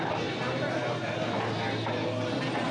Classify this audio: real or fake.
real